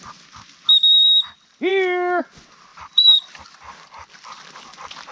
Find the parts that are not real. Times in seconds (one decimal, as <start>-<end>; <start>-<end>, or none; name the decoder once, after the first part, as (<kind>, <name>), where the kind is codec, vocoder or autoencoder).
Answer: 2.7-3.6 (vocoder, BigVGAN v2)